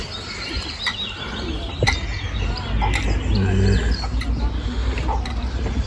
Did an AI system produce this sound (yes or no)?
no